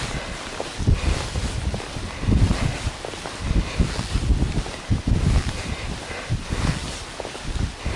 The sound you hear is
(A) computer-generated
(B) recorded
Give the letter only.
B